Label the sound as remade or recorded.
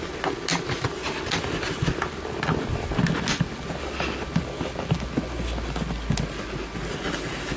recorded